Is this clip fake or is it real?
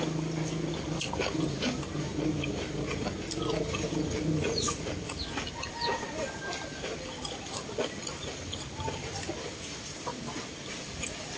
real